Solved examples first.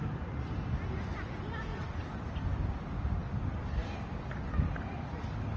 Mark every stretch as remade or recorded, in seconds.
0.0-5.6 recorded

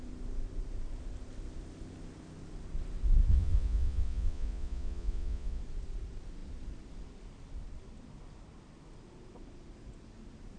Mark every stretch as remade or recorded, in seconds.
0.0-3.3 recorded; 3.3-5.6 remade; 5.6-10.6 recorded